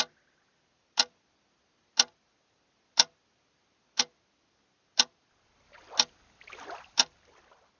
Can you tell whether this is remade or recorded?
recorded